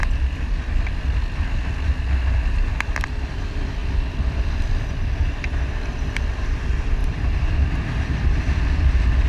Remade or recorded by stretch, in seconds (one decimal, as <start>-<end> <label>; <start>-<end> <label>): 0.0-3.8 recorded; 3.8-4.6 remade; 4.6-7.0 recorded; 7.0-8.4 remade; 8.4-9.3 recorded